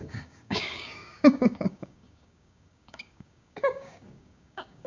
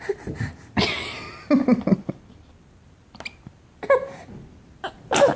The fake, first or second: first